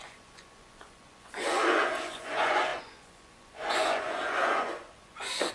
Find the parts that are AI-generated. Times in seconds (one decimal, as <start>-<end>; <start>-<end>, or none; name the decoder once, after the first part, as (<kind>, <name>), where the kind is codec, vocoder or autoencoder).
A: 0.0-5.5 (vocoder, Vocos)